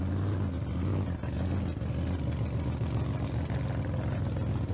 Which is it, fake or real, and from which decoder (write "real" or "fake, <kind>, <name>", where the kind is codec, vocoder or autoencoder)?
real